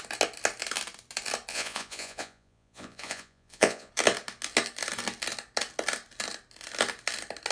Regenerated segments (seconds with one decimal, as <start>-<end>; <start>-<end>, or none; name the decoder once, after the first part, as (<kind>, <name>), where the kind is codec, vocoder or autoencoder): 1.5-3.9 (vocoder, Vocos)

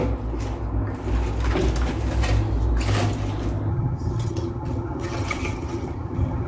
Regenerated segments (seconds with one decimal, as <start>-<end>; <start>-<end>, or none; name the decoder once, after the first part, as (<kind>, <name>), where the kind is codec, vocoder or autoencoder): 3.7-6.5 (vocoder, HiFi-GAN)